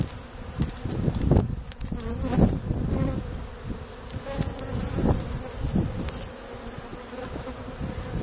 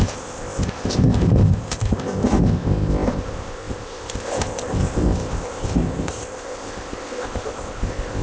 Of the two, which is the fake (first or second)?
second